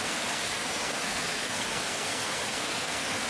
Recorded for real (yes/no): no